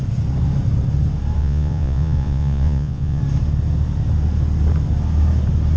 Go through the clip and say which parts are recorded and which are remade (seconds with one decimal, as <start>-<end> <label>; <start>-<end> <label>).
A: 0.0-1.4 recorded; 1.4-3.2 remade; 3.2-5.8 recorded